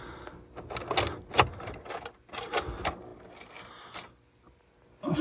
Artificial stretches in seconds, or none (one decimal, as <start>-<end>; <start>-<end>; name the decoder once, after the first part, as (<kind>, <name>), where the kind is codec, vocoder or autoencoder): none